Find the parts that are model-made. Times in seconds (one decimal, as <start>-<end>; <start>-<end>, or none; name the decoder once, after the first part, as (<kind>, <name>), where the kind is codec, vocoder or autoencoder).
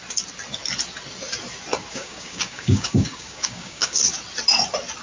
1.9-4.0 (codec, DAC)